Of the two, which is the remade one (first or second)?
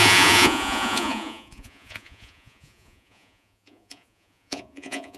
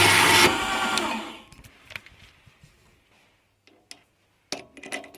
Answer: first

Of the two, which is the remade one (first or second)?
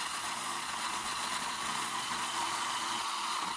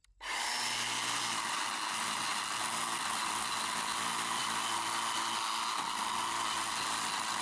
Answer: first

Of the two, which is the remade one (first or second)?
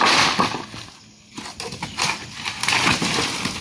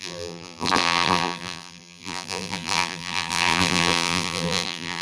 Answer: second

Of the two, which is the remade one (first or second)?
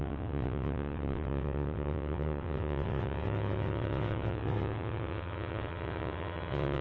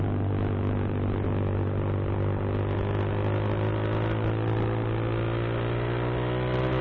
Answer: first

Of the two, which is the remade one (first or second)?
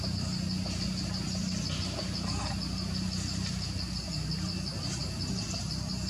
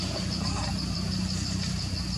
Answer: second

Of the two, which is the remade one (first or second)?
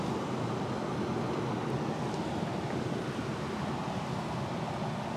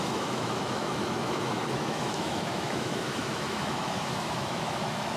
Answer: second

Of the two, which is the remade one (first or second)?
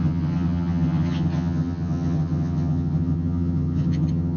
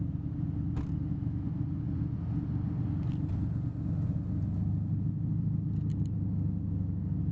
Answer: first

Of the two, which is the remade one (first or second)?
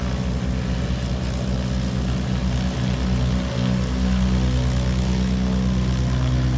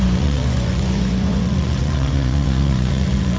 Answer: second